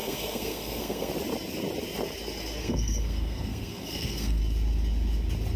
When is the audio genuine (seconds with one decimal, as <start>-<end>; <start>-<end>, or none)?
1.1-2.6; 4.4-5.6